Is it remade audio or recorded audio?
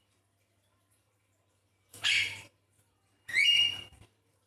remade